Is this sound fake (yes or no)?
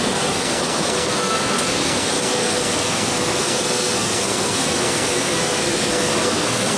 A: yes